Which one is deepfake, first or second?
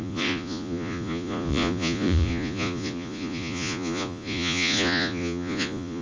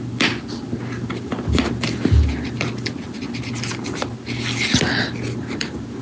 first